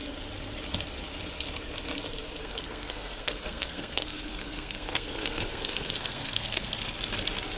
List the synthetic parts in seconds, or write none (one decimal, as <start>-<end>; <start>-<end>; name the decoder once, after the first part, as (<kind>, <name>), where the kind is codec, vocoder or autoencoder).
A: 2.4-6.7 (codec, SNAC)